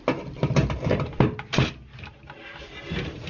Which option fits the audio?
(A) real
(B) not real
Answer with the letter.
A